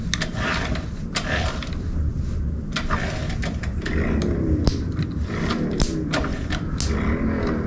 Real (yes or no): yes